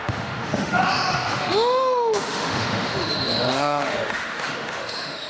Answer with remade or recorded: remade